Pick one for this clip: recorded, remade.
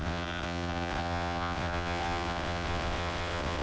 remade